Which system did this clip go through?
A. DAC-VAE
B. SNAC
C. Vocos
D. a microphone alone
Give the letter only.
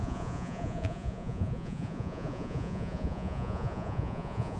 C